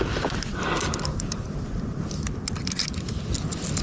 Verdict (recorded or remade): recorded